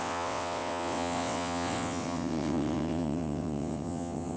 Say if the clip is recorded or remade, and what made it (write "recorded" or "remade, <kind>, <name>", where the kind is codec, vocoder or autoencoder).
remade, vocoder, WaveNeXt